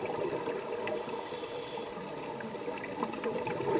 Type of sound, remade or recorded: recorded